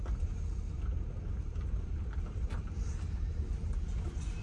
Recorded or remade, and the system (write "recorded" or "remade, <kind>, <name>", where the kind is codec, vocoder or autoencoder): recorded